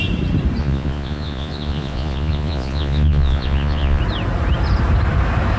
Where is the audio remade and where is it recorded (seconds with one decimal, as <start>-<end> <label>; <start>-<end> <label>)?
0.0-0.6 recorded; 0.6-4.0 remade; 4.0-5.6 recorded